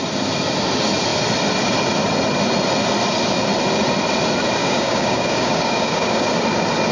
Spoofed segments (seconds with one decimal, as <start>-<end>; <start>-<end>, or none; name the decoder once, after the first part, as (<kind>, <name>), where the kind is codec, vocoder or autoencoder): 4.6-6.3 (codec, DAC)

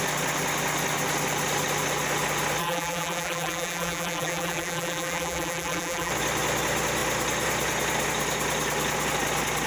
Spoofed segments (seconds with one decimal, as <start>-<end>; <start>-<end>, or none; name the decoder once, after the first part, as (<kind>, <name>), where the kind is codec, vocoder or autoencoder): 2.6-6.1 (vocoder, BigVGAN v2)

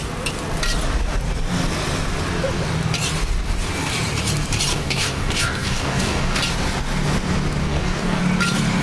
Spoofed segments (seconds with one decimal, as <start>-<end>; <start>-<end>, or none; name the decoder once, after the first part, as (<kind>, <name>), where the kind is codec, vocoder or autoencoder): 4.7-6.4 (codec, DAC); 7.6-8.2

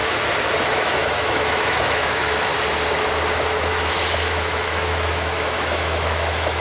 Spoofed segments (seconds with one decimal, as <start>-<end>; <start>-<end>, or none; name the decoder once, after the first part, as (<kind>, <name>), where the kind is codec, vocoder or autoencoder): 0.6-2.5 (autoencoder, DAC-VAE); 3.7-6.6